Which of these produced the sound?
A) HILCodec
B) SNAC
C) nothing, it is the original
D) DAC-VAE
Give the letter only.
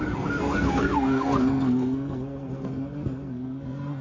B